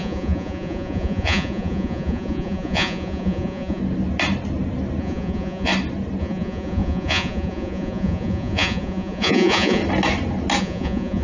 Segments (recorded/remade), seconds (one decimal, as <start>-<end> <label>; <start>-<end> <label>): 0.0-3.8 remade; 3.8-5.0 recorded; 5.0-5.7 remade; 5.7-6.2 recorded; 6.2-9.8 remade; 9.8-10.6 recorded; 10.6-11.2 remade